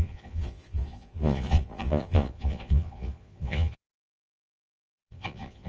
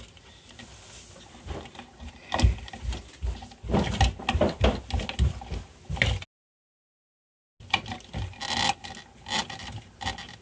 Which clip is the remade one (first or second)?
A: first